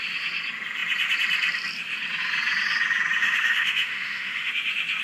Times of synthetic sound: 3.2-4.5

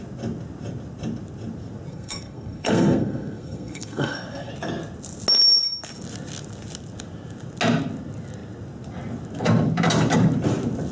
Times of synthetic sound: 1.9-4.5

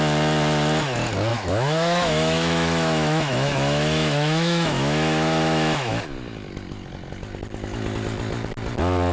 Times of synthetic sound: 1.3-6.0

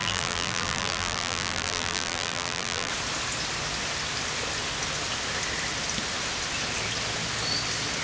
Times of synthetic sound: 0.0-2.9

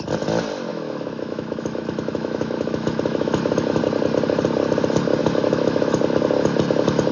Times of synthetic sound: 0.7-3.8; 5.2-6.0

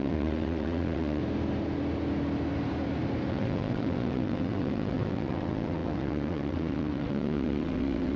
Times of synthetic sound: 0.0-1.2; 3.3-8.2

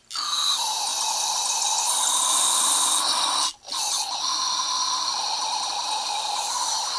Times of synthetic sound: none